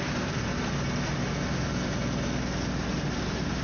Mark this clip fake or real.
real